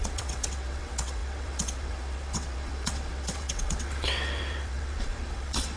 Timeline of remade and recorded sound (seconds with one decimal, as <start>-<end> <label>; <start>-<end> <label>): 0.0-5.8 remade